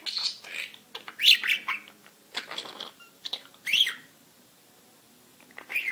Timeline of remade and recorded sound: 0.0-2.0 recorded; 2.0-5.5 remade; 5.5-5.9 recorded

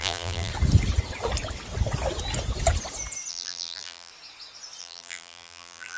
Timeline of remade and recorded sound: 0.0-0.5 remade; 0.5-3.3 recorded; 3.3-4.1 remade; 4.1-4.8 recorded; 4.8-6.0 remade

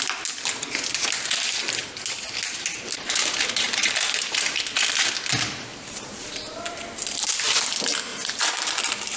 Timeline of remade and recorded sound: 0.0-2.5 recorded; 2.5-4.6 remade; 4.6-5.7 recorded; 5.7-7.6 remade; 7.6-8.1 recorded; 8.1-9.2 remade

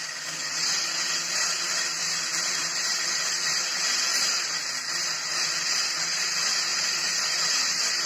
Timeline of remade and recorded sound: 0.0-2.6 recorded; 2.6-3.6 remade; 3.6-4.1 recorded; 4.1-4.6 remade; 4.6-6.7 recorded; 6.7-7.5 remade; 7.5-8.1 recorded

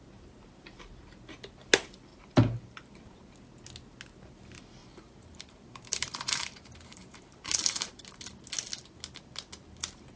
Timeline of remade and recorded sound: 0.0-2.1 recorded; 2.1-3.3 remade; 3.3-4.8 recorded; 4.8-8.0 remade; 8.0-10.2 recorded

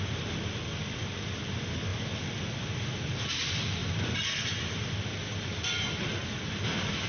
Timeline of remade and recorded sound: 0.0-1.9 recorded; 1.9-3.2 remade; 3.2-3.8 recorded; 3.8-5.2 remade; 5.2-6.2 recorded; 6.2-7.1 remade

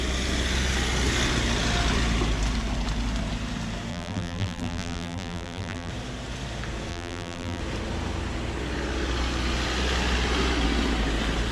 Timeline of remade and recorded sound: 0.0-3.9 recorded; 3.9-5.9 remade; 5.9-6.9 recorded; 6.9-7.6 remade; 7.6-11.5 recorded

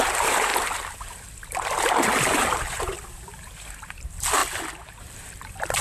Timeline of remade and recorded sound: 0.0-0.5 remade; 0.5-2.2 recorded; 2.2-4.4 remade; 4.4-5.0 recorded; 5.0-5.8 remade